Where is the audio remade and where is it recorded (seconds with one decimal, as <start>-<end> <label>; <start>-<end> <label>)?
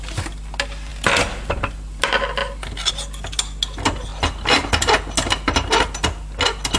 0.0-6.8 recorded